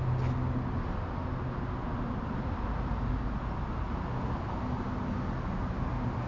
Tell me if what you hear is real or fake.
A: real